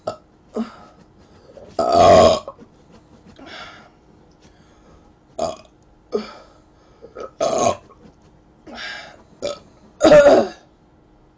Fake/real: real